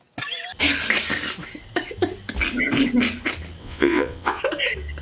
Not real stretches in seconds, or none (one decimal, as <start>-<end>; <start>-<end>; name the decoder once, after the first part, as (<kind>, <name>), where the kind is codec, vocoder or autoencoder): 3.6-4.4 (vocoder, WaveNeXt)